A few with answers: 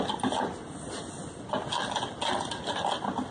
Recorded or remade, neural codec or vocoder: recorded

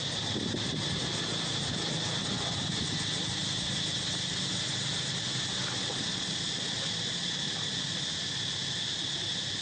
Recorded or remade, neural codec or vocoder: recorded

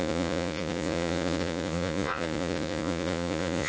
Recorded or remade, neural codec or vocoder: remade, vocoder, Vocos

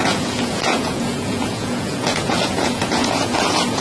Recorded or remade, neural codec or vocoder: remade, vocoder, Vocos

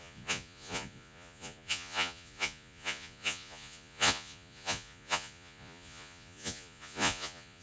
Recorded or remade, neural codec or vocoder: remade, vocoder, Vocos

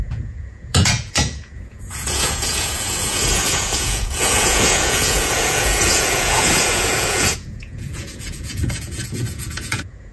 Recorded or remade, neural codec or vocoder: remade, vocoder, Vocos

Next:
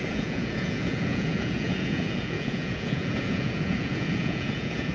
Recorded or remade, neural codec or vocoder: remade, vocoder, Vocos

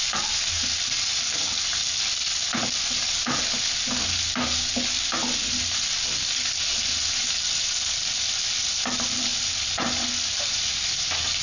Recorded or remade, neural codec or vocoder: recorded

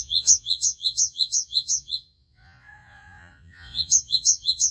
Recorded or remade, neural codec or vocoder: remade, vocoder, Vocos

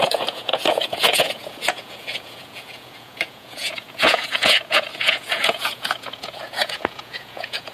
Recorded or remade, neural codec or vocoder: remade, vocoder, Vocos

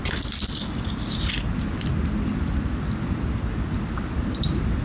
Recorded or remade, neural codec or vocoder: recorded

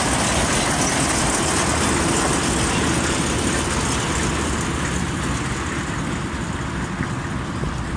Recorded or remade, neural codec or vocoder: recorded